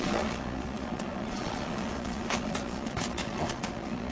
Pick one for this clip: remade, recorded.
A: remade